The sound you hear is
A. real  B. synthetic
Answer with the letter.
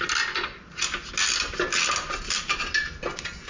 A